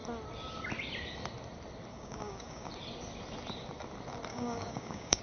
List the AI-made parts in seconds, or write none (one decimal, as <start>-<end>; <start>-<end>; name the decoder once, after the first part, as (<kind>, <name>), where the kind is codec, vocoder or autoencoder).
1.9-2.7 (codec, DAC); 4.3-5.2